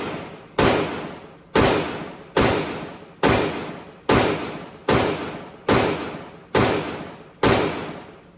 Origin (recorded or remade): recorded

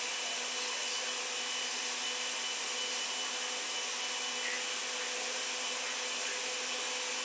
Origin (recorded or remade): recorded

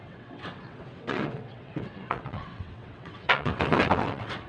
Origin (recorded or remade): remade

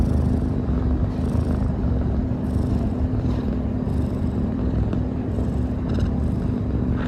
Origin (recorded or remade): remade